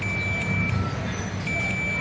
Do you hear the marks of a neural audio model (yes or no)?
no